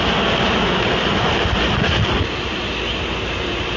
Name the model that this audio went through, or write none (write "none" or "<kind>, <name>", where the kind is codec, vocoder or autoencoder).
none